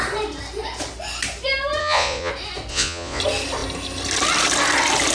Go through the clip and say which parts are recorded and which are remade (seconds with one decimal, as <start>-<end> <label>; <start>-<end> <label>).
0.0-1.8 recorded; 1.8-2.3 remade; 2.3-2.7 recorded; 2.7-3.2 remade; 3.2-5.1 recorded